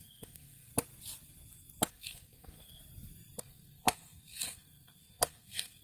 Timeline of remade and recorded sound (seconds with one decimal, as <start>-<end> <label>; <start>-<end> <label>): 0.0-0.7 remade; 0.7-1.9 recorded; 1.9-2.8 remade; 2.8-3.4 recorded; 3.4-5.8 remade